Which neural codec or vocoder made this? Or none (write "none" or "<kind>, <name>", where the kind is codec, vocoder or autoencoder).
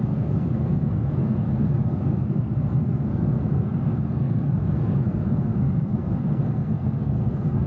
codec, SNAC